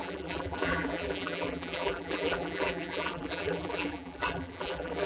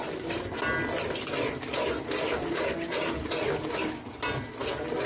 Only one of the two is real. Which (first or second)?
second